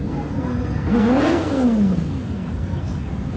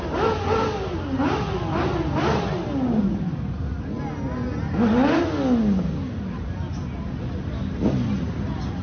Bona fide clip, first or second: second